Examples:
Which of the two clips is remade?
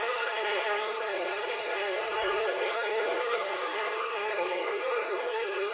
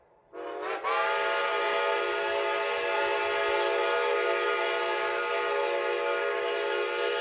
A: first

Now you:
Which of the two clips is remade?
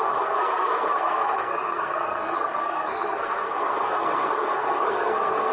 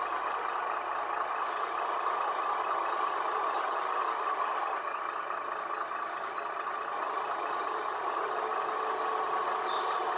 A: first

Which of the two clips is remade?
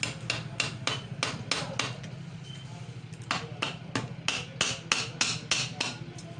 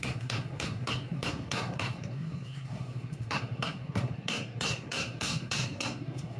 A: second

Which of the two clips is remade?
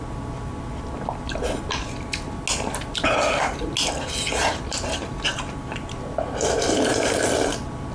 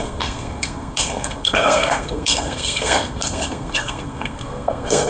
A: second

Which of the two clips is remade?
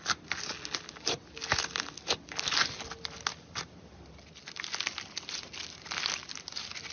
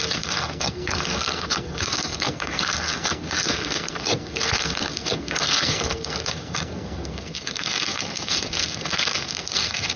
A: second